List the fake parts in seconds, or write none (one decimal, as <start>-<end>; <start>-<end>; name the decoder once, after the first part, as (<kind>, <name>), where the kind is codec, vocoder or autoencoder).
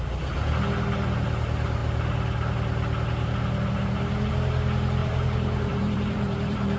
5.0-6.8 (vocoder, BigVGAN v2)